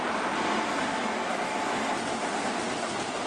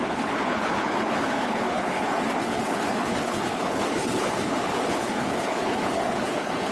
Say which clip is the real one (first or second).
first